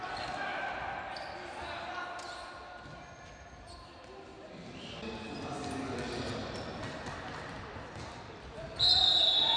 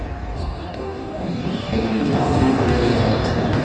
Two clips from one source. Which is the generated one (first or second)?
second